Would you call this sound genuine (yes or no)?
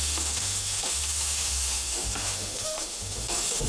no